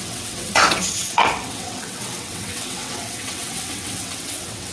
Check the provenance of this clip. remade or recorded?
remade